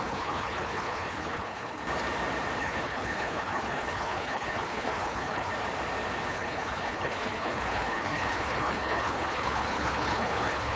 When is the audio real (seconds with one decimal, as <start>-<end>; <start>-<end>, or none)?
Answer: 1.8-2.6; 5.5-6.3